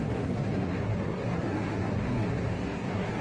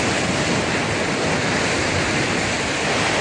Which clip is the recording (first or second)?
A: second